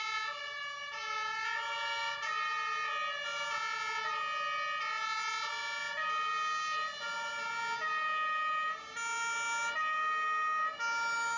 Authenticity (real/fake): real